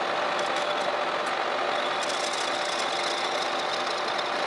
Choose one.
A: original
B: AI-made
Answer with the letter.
A